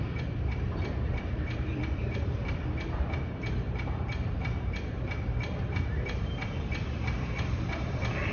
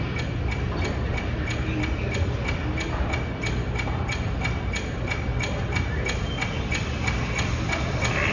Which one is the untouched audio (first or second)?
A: second